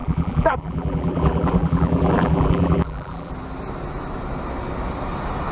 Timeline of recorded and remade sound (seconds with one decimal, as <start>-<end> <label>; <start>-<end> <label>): 0.0-3.3 remade; 3.3-5.5 recorded